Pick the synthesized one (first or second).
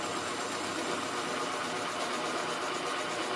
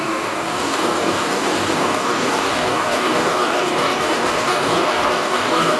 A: second